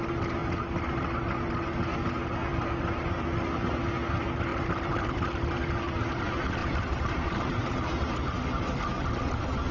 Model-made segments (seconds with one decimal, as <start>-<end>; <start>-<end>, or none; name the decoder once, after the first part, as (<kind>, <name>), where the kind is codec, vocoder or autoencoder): 4.5-6.1 (vocoder, BigVGAN v2); 6.6-7.8